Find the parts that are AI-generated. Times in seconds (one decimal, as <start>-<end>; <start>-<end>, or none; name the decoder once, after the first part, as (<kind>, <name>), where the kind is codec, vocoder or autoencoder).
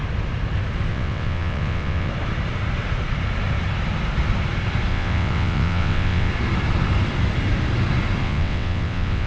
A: 0.9-2.1 (vocoder, WaveNeXt); 4.9-6.3; 8.2-9.3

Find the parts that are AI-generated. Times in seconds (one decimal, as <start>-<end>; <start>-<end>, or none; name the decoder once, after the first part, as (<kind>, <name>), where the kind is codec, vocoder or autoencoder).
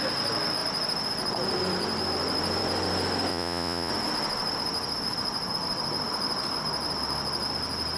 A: 3.3-3.9 (vocoder, Vocos)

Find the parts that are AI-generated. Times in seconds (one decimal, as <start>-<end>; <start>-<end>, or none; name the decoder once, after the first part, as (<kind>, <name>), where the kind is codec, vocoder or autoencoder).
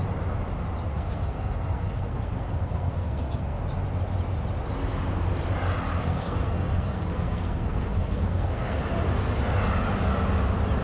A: 0.9-3.6 (codec, SNAC); 5.9-8.8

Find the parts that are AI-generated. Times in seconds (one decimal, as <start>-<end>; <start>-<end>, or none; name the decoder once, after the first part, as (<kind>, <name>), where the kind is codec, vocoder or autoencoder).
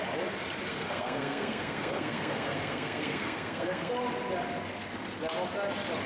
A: 0.7-3.9 (codec, SNAC)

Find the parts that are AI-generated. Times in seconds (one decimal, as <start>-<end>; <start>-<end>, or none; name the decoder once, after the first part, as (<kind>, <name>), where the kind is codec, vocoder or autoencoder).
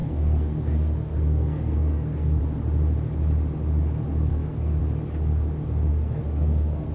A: 0.0-2.4 (codec, SNAC); 4.3-4.8; 5.9-6.9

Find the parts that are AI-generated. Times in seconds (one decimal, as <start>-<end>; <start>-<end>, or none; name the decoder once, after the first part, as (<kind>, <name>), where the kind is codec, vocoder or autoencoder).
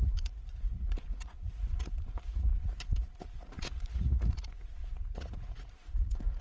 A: 0.0-6.4 (vocoder, Vocos)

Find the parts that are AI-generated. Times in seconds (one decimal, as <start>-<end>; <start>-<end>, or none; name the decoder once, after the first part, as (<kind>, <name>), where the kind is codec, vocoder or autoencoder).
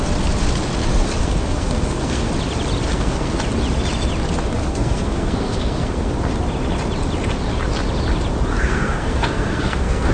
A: 1.2-2.3 (codec, SNAC); 2.9-3.4; 4.6-6.1; 8.5-10.1